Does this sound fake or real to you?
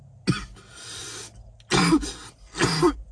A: real